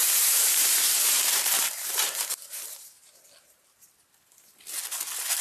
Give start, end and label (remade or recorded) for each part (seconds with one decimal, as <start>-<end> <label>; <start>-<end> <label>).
0.0-3.2 remade; 3.2-5.4 recorded